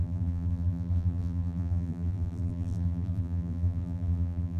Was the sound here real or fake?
fake